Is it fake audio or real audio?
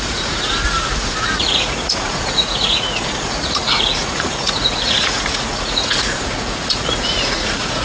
fake